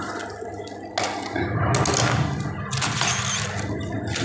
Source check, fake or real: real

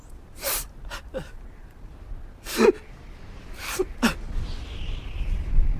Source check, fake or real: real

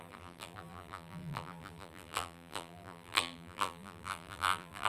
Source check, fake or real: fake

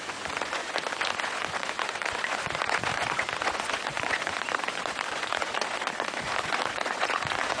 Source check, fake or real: fake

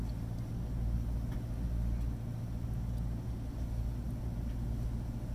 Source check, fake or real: real